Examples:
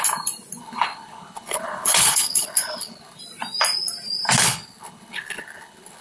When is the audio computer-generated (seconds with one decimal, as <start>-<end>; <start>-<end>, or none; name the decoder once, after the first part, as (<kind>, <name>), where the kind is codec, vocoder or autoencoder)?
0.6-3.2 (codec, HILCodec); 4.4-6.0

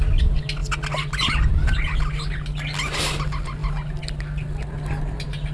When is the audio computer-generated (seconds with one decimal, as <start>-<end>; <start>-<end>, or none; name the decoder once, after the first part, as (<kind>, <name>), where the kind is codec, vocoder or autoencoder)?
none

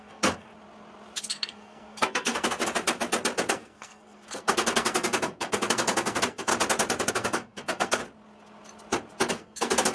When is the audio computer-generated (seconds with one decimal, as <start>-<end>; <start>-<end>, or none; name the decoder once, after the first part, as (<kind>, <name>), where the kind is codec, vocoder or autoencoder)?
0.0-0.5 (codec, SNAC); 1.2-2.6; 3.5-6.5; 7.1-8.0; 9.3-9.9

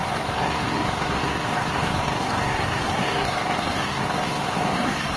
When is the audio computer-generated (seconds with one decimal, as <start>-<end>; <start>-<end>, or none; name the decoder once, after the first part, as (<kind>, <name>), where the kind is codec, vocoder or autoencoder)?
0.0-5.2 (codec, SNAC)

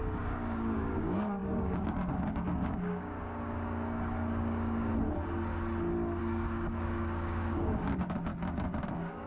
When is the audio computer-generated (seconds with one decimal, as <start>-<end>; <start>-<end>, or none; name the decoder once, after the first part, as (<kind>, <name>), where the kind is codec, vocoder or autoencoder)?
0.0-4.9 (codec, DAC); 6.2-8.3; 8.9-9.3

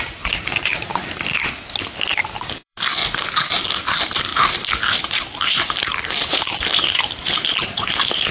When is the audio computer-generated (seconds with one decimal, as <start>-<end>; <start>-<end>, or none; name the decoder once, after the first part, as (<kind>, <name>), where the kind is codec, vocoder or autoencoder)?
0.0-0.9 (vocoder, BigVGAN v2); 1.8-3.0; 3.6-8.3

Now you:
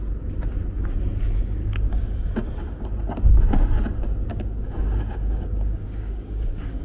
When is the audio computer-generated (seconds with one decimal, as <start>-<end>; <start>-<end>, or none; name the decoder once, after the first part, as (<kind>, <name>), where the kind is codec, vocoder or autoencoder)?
1.6-2.2 (codec, DAC); 4.3-6.8

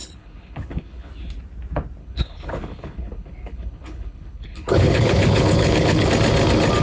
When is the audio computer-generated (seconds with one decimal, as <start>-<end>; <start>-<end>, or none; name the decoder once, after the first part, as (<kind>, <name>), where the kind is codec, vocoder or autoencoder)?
0.0-1.1 (codec, HILCodec); 2.0-6.1